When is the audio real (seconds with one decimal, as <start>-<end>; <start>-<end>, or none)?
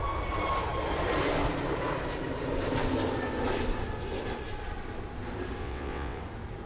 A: 0.0-5.6; 6.2-6.7